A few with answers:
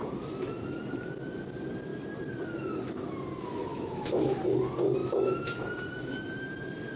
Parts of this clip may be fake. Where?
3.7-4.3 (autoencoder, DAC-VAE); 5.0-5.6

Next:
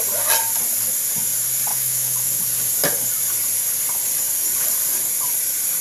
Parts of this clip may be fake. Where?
1.7-2.4 (autoencoder, DAC-VAE)

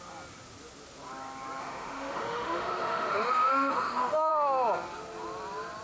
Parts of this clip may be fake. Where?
1.6-4.3 (autoencoder, DAC-VAE)

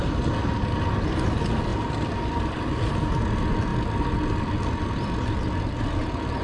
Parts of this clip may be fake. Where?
none

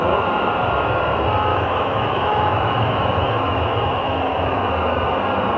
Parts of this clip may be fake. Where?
1.5-4.7 (autoencoder, DAC-VAE)

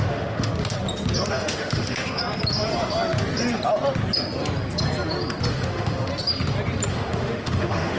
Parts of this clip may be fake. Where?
0.0-0.5 (autoencoder, DAC-VAE); 1.3-2.2; 5.5-6.1; 6.9-8.0